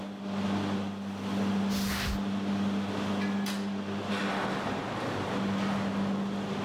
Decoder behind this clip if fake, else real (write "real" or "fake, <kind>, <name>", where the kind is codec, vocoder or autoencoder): real